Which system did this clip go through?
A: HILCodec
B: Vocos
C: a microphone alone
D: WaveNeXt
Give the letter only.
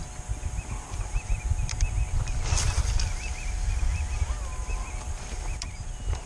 C